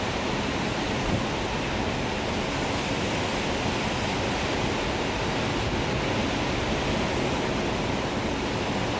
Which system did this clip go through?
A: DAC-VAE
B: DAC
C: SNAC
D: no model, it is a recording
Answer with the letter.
D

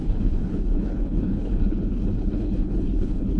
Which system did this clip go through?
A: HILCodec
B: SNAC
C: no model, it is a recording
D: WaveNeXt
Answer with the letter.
A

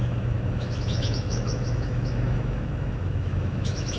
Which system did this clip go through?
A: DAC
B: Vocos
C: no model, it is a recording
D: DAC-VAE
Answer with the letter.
D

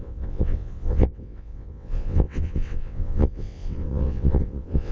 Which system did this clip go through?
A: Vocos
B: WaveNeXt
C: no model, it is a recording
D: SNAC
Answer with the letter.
B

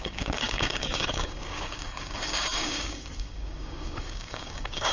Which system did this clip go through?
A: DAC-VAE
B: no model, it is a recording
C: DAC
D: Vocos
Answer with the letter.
C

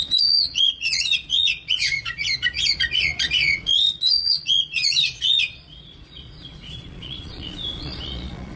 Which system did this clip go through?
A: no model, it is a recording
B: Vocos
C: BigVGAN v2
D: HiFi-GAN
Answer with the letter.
B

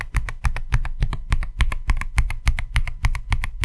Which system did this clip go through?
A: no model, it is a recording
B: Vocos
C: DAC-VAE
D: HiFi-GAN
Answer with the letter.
A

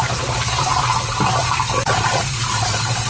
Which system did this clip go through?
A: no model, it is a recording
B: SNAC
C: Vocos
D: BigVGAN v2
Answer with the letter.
D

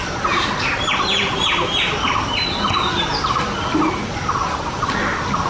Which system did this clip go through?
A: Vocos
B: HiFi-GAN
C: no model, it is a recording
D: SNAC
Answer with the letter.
C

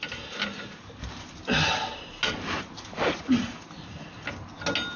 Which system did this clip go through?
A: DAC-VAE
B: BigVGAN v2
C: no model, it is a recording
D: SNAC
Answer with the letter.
C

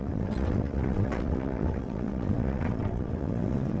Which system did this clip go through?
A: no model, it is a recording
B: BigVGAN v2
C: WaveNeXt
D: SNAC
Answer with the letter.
C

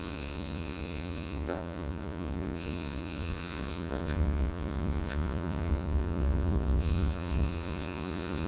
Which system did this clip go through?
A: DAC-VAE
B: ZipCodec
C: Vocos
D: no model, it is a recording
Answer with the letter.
C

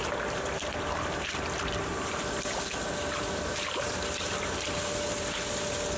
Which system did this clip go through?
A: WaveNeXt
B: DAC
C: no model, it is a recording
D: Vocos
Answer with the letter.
C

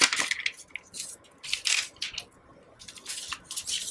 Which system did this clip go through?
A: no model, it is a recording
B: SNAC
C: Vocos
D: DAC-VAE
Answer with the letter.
A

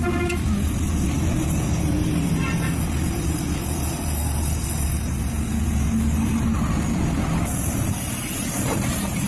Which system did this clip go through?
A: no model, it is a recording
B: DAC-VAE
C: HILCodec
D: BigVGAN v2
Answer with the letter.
A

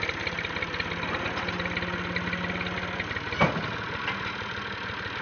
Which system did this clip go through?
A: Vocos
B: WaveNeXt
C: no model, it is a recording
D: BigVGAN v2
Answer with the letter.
C